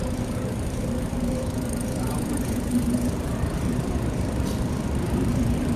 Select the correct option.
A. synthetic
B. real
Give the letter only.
A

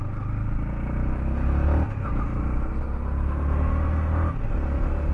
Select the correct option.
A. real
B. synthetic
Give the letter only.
A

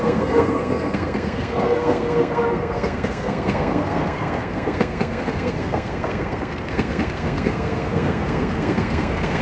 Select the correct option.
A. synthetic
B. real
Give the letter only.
A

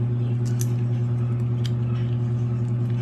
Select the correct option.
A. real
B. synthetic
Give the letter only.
A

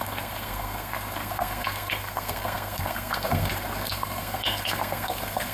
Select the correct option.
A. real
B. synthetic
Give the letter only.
B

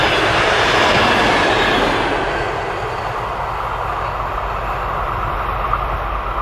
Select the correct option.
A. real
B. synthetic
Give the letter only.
A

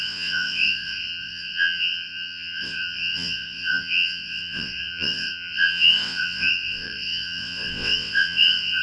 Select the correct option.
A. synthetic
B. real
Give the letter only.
A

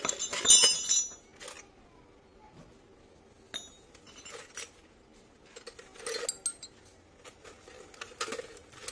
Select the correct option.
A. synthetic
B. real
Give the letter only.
B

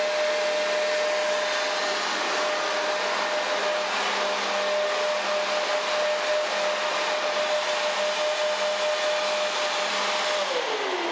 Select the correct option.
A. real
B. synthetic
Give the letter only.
A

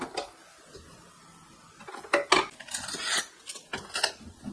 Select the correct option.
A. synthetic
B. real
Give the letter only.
B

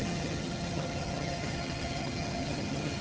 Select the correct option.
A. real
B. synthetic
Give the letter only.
B